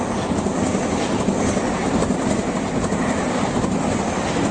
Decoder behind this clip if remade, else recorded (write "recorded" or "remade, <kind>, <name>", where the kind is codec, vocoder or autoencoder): recorded